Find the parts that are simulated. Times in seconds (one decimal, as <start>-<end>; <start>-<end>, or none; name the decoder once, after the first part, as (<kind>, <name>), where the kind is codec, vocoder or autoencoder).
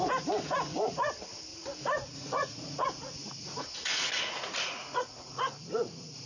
1.5-5.3 (vocoder, Vocos)